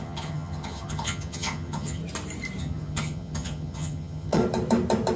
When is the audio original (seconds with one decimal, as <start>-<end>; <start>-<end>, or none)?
2.0-2.6; 4.4-5.2